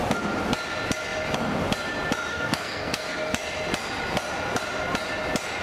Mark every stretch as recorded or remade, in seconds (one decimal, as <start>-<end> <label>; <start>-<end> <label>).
0.0-2.3 recorded; 2.3-3.4 remade; 3.4-5.6 recorded